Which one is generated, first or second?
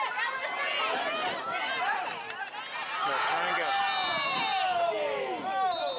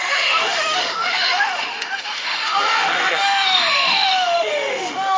second